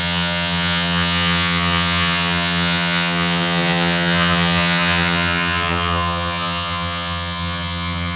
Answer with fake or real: fake